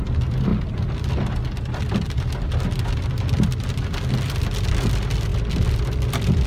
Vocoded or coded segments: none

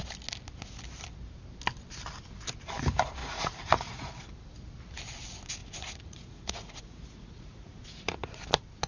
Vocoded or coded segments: 3.2-4.1; 5.6-8.4

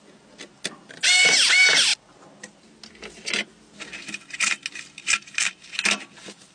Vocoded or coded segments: none

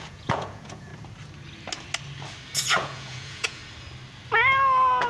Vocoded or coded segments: 0.0-0.9; 2.6-3.6

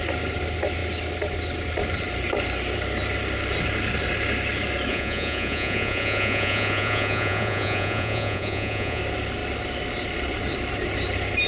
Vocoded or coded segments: 4.9-9.0

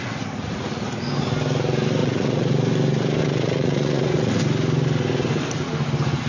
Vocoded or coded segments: 2.0-2.5; 3.2-4.4